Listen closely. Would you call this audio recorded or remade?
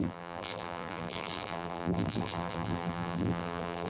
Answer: remade